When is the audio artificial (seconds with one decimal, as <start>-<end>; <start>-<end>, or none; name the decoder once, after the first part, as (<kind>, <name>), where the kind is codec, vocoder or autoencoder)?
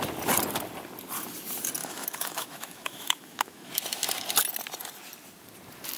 1.8-3.7 (autoencoder, DAC-VAE)